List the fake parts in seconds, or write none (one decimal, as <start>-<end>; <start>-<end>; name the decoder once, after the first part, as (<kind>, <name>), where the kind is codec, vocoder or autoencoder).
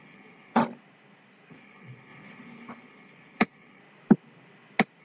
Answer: 0.0-0.6 (codec, HILCodec); 1.5-3.8